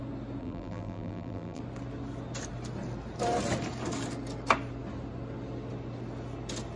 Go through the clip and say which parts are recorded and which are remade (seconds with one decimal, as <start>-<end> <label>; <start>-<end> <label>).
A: 0.0-0.4 recorded; 0.4-1.6 remade; 1.6-6.8 recorded